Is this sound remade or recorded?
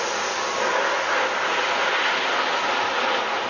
recorded